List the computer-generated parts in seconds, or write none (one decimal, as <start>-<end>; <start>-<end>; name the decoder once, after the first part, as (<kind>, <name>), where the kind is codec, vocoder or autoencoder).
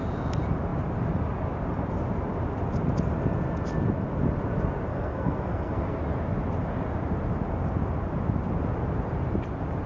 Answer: 4.9-6.0 (codec, SNAC)